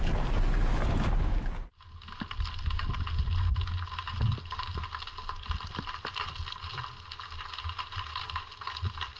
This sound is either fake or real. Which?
real